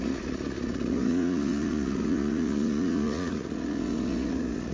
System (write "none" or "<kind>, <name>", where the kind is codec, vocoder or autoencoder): vocoder, Vocos